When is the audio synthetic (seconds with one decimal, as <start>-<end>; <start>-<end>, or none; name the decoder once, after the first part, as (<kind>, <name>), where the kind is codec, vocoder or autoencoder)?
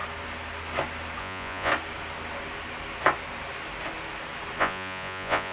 1.2-1.7 (vocoder, Vocos); 4.6-5.5